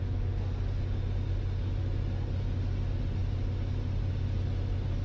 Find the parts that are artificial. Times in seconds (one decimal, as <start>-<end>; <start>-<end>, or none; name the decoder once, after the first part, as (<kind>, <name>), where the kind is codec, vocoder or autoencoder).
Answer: none